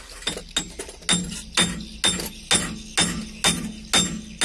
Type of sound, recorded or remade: recorded